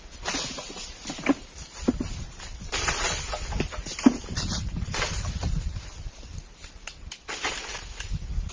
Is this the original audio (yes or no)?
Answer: yes